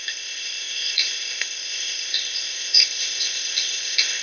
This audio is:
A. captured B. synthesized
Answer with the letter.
B